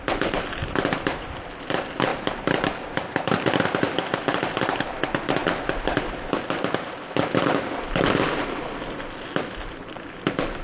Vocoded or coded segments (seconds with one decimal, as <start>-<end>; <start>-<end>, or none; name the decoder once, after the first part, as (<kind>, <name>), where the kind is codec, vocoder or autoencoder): 2.1-3.5 (vocoder, BigVGAN v2)